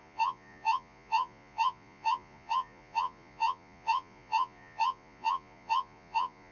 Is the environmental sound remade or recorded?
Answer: remade